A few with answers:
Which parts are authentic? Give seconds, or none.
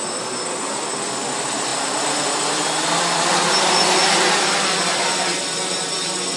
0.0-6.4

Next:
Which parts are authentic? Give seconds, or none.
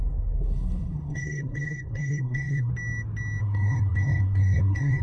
2.7-3.4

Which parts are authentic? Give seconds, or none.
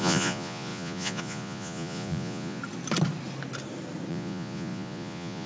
2.6-4.1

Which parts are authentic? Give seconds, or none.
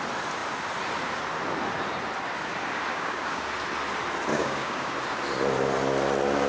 0.0-2.9; 3.4-4.3; 4.9-6.5